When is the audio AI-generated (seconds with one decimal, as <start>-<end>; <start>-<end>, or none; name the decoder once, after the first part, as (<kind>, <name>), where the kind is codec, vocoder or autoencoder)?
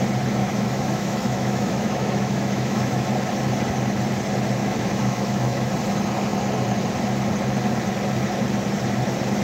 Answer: 0.4-3.1 (autoencoder, DAC-VAE); 4.6-5.7